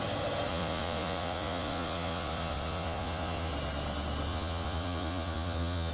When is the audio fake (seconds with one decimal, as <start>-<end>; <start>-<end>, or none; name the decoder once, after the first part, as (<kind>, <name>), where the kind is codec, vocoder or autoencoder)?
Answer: 0.5-3.5 (vocoder, Vocos); 4.3-5.9